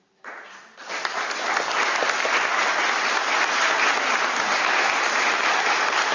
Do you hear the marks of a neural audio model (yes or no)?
no